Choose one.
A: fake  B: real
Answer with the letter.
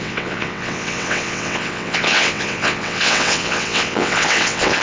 A